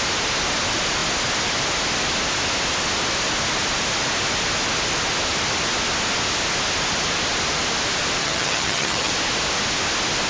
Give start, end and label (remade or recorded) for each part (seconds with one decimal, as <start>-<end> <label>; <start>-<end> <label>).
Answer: 0.0-8.2 recorded; 8.2-9.1 remade; 9.1-10.3 recorded